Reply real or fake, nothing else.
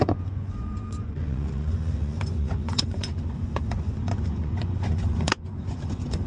fake